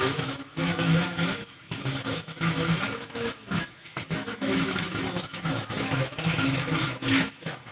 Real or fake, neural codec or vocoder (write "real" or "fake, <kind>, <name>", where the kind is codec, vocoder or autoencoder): fake, autoencoder, DAC-VAE